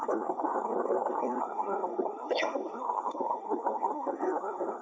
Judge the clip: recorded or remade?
remade